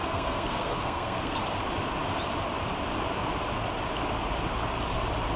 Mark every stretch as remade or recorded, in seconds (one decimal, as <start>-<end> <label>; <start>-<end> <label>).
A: 0.0-1.4 remade; 1.4-5.4 recorded